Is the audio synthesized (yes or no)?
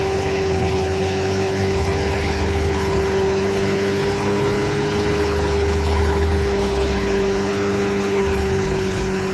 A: yes